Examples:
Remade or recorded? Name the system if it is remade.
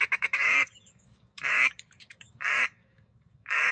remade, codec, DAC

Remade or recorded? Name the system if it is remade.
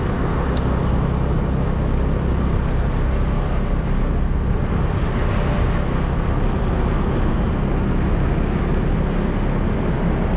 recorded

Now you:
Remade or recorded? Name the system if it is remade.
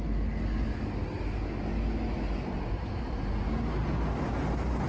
recorded